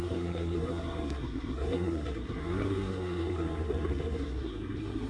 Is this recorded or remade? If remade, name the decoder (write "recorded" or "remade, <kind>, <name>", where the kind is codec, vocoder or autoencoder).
remade, codec, SNAC